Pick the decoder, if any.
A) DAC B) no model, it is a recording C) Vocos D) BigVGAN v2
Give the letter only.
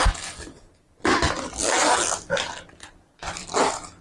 B